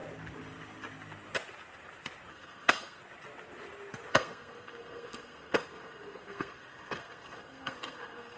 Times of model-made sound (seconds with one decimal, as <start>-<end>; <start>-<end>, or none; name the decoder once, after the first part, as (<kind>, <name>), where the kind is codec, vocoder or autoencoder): 2.3-3.0 (codec, SNAC); 4.1-8.4